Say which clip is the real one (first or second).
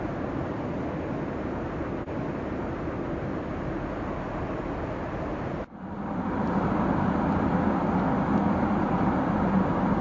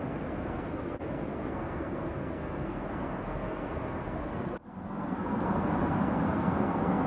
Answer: first